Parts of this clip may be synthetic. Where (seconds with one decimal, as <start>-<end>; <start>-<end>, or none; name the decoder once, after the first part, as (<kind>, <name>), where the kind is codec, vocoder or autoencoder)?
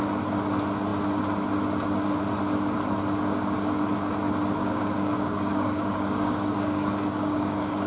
4.6-7.9 (codec, DAC)